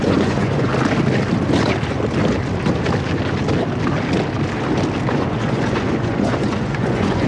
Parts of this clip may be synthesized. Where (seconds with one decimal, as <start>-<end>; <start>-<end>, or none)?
0.0-0.7; 5.1-7.3